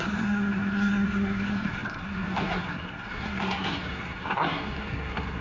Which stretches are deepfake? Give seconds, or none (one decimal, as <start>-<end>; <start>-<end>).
0.0-5.4